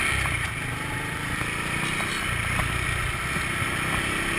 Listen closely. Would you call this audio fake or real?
real